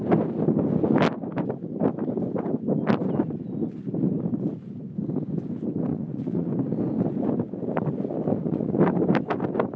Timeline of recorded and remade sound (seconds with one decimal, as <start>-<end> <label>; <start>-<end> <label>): 0.0-5.9 recorded; 5.9-6.5 remade; 6.5-8.3 recorded; 8.3-8.8 remade; 8.8-9.8 recorded